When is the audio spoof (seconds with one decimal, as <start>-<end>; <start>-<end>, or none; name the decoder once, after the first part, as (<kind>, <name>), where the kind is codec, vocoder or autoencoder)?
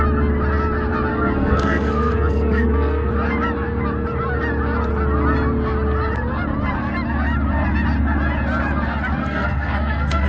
1.1-3.1 (codec, SNAC); 9.2-10.3